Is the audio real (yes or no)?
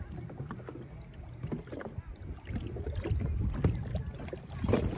yes